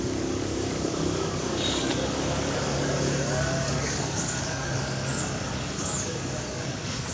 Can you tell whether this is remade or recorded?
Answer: remade